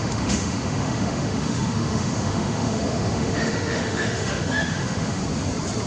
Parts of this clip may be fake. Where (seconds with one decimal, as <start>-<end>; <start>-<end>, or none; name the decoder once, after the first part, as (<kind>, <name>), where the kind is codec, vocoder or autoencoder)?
0.0-5.2 (autoencoder, DAC-VAE)